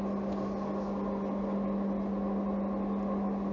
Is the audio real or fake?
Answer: real